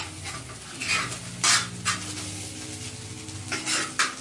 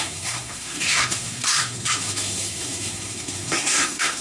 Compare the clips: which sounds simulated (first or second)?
second